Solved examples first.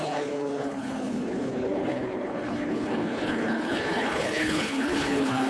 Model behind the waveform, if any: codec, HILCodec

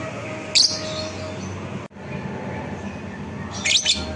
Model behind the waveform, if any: none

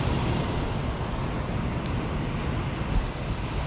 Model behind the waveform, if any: none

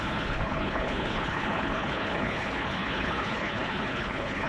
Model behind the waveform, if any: codec, HILCodec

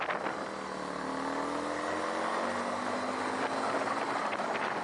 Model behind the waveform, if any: none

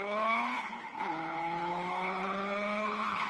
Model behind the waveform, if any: codec, HILCodec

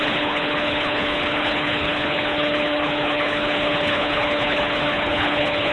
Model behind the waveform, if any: codec, HILCodec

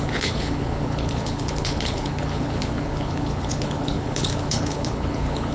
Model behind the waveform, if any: codec, HILCodec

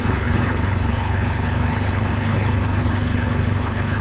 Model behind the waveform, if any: codec, HILCodec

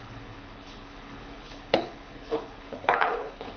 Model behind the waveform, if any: codec, HILCodec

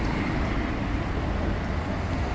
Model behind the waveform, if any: none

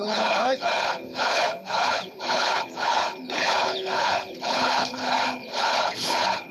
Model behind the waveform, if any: codec, HILCodec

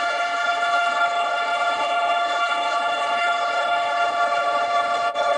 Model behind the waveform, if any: codec, HILCodec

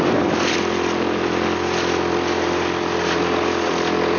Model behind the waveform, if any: none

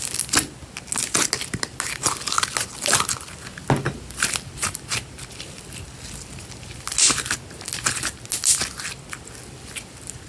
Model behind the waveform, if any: none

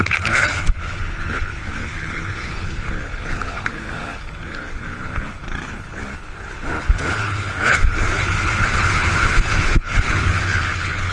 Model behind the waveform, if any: codec, HILCodec